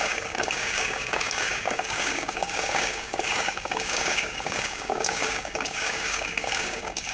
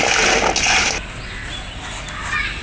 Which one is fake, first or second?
first